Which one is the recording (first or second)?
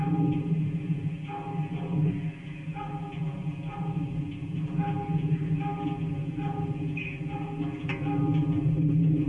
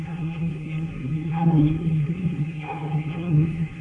first